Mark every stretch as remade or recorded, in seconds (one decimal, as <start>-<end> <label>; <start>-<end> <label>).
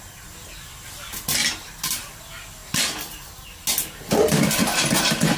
0.0-1.4 recorded; 1.4-2.2 remade; 2.2-5.4 recorded